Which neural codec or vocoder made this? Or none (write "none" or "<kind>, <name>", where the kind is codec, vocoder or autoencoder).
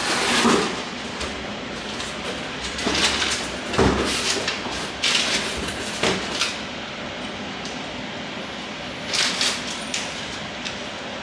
none